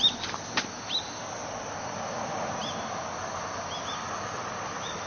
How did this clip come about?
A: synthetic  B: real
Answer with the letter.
B